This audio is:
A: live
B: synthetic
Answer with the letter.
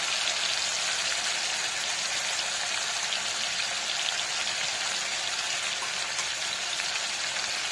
A